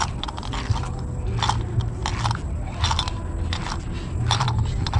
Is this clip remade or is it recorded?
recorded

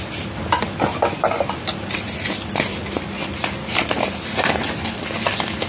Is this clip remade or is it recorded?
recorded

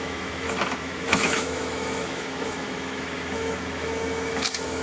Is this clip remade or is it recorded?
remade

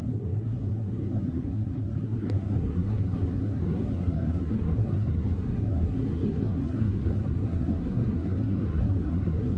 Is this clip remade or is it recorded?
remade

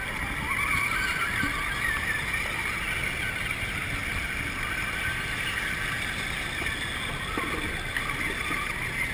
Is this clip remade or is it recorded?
recorded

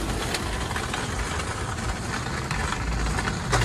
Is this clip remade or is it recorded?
recorded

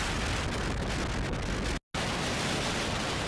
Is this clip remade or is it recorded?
recorded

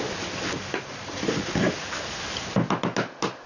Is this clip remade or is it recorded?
recorded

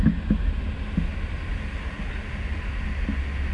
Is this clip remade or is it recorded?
recorded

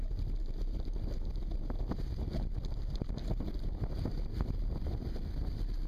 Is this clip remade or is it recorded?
recorded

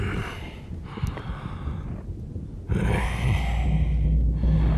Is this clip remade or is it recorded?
recorded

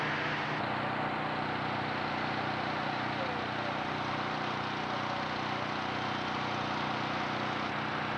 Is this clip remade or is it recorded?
recorded